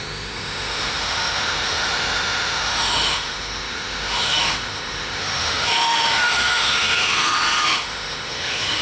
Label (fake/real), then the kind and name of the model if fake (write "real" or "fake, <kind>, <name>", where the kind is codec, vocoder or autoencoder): fake, autoencoder, DAC-VAE